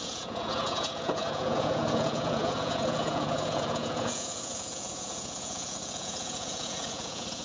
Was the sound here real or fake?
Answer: fake